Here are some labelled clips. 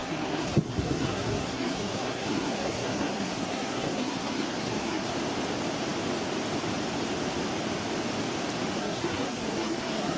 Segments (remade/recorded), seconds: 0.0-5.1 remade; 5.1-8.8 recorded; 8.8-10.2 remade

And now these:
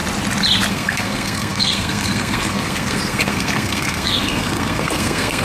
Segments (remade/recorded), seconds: 0.0-0.7 recorded; 0.7-5.4 remade

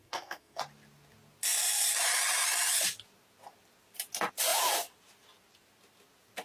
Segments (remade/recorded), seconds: 0.0-0.6 remade; 0.6-6.4 recorded

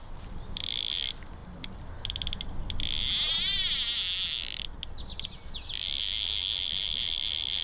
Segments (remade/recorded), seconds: 0.0-7.6 recorded

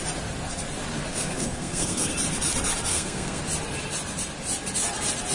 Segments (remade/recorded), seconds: 0.0-1.1 recorded; 1.1-2.1 remade; 2.1-2.9 recorded; 2.9-3.4 remade; 3.4-5.3 recorded

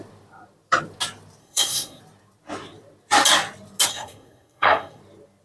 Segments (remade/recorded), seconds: 0.0-1.4 recorded; 1.4-2.0 remade; 2.0-3.9 recorded; 3.9-5.0 remade; 5.0-5.4 recorded

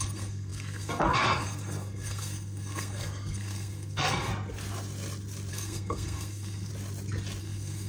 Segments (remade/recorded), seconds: 0.0-4.3 remade; 4.3-5.5 recorded; 5.5-6.7 remade; 6.7-7.4 recorded; 7.4-7.9 remade

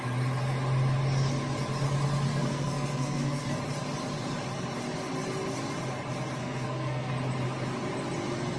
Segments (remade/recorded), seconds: 0.0-2.3 recorded; 2.3-3.5 remade; 3.5-6.4 recorded; 6.4-7.1 remade; 7.1-8.6 recorded